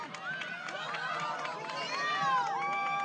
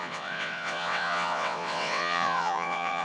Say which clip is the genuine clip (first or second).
first